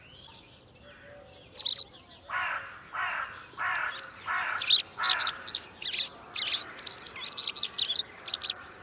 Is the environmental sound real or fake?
real